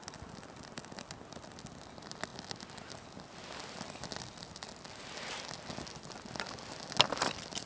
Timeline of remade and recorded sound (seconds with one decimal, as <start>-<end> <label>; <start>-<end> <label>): 0.0-7.7 recorded